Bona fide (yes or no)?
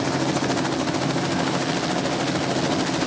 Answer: yes